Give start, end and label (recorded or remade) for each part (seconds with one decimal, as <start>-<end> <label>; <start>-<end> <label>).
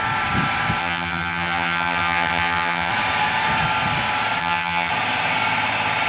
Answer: 0.0-0.8 recorded; 0.8-2.9 remade; 2.9-4.4 recorded; 4.4-4.9 remade; 4.9-6.1 recorded